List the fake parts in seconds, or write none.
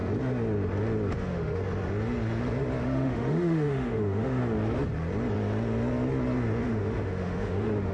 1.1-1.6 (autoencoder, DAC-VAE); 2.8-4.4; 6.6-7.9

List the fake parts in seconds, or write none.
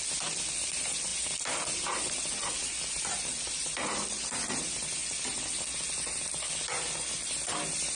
none